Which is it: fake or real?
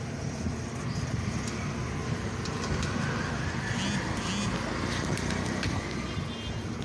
real